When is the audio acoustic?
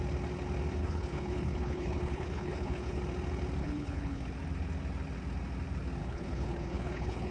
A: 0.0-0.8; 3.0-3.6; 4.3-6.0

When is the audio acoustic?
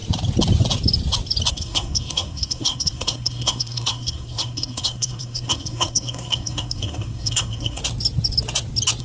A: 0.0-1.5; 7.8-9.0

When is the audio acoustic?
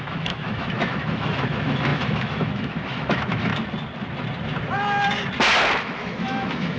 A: 3.5-5.8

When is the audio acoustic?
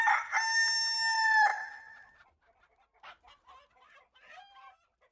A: 0.0-5.1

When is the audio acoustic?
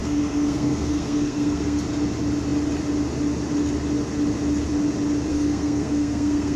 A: 1.8-5.3